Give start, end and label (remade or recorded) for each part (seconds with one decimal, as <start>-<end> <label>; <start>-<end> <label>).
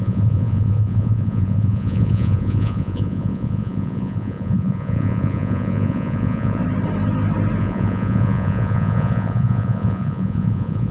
0.0-6.6 remade; 6.6-7.6 recorded; 7.6-10.9 remade